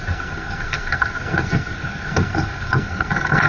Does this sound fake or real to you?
fake